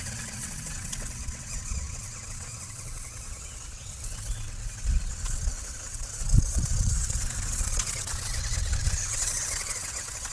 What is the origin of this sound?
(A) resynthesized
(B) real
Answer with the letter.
A